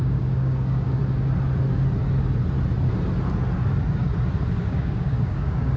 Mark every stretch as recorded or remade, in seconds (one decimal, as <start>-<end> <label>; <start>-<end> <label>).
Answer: 0.0-1.0 remade; 1.0-4.5 recorded; 4.5-5.8 remade